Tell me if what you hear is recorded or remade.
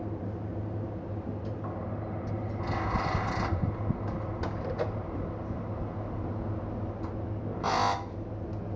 recorded